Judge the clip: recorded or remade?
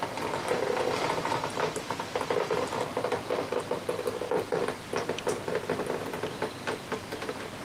recorded